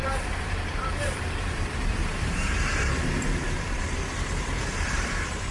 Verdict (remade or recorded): remade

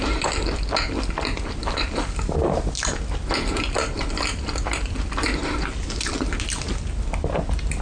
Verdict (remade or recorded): recorded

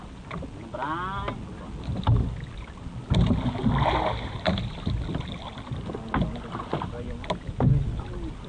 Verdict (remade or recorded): recorded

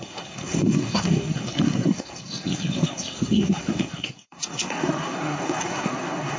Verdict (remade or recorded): remade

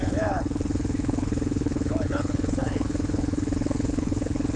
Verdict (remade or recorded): remade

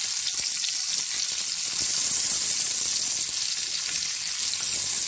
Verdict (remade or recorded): recorded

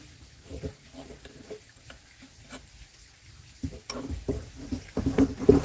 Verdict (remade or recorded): recorded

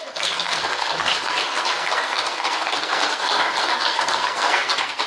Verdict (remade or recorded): remade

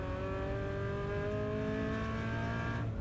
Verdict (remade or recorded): recorded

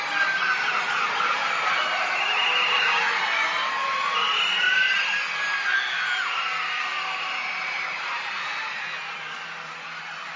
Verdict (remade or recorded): recorded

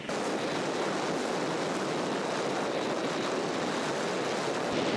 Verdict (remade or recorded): recorded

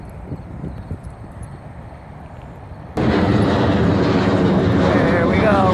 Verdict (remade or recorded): remade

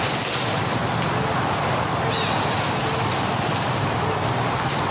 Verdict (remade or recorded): recorded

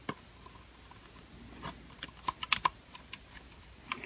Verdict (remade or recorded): recorded